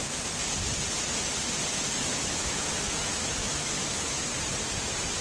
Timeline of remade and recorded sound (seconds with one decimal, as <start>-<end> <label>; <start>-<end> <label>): 0.0-2.1 recorded; 2.1-4.2 remade; 4.2-5.2 recorded